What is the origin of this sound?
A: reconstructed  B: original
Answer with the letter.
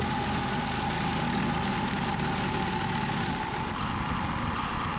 B